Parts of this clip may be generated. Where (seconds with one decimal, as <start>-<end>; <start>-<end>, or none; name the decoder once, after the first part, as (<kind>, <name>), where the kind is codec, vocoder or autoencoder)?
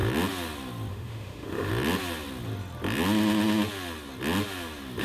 0.9-1.7 (autoencoder, DAC-VAE)